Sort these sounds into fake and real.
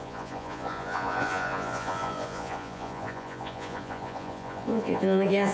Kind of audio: fake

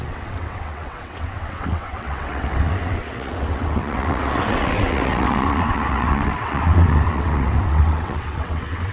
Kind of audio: fake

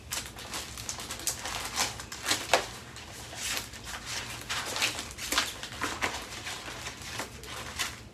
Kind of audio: real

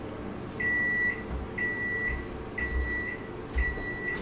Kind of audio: real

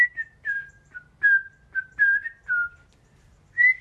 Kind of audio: real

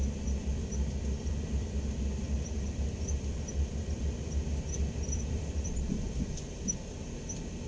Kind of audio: fake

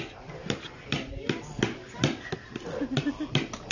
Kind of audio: real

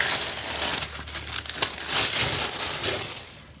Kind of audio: real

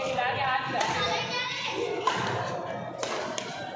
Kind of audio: real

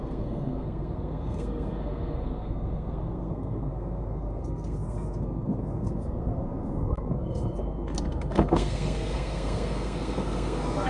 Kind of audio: fake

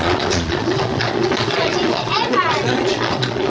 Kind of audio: fake